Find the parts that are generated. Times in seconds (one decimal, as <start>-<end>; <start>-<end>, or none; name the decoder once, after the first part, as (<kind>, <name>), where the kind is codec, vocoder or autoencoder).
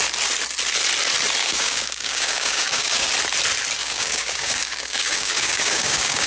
1.4-3.1 (codec, DAC); 3.8-6.3